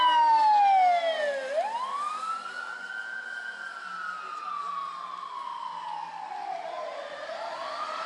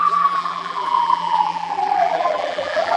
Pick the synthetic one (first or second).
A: second